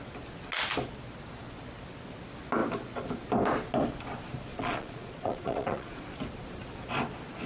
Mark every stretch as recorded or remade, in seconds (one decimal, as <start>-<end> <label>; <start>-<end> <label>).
0.0-4.5 recorded; 4.5-6.0 remade; 6.0-7.5 recorded